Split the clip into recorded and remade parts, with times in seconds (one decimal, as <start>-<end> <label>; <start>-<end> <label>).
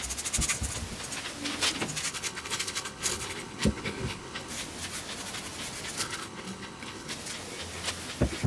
0.0-2.1 recorded; 2.1-4.5 remade; 4.5-6.0 recorded; 6.0-7.1 remade; 7.1-8.5 recorded